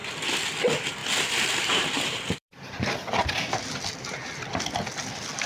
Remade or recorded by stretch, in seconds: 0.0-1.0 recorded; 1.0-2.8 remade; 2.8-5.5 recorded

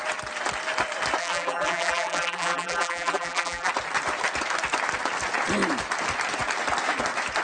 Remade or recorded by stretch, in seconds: 0.0-1.2 recorded; 1.2-3.7 remade; 3.7-7.4 recorded

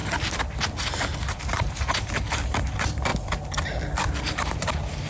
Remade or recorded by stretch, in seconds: 0.0-1.4 recorded; 1.4-3.1 remade; 3.1-4.2 recorded; 4.2-5.1 remade

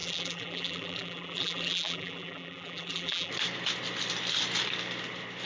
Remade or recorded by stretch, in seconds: 0.0-3.3 remade; 3.3-5.5 recorded

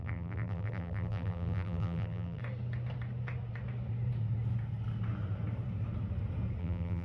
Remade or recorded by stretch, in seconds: 0.0-2.4 remade; 2.4-6.6 recorded; 6.6-7.0 remade

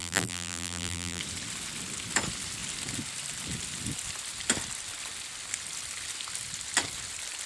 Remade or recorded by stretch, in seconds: 0.0-1.2 remade; 1.2-7.5 recorded

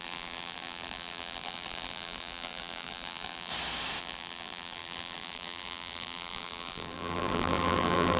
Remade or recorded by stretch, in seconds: 0.0-3.5 remade; 3.5-4.0 recorded; 4.0-8.2 remade